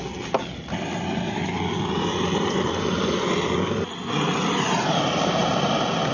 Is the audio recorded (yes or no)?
yes